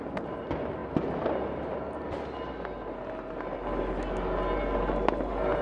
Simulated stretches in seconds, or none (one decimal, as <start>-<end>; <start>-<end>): none

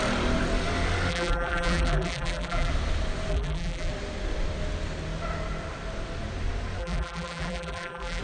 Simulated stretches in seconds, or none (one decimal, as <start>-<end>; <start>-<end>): 1.1-2.7; 3.3-3.9; 6.8-8.2

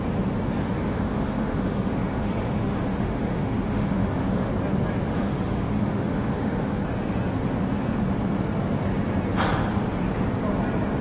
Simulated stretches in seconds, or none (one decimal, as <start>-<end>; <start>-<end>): 0.6-4.5; 5.1-6.8